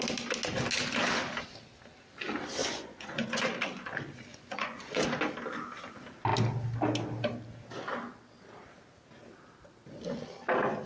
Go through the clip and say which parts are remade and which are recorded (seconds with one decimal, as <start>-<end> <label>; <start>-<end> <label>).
0.0-2.6 recorded; 2.6-3.5 remade; 3.5-4.3 recorded; 4.3-5.0 remade; 5.0-10.9 recorded